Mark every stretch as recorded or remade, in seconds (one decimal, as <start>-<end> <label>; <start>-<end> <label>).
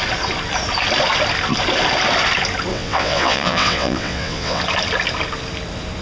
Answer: 0.0-2.7 recorded; 2.7-4.6 remade; 4.6-6.0 recorded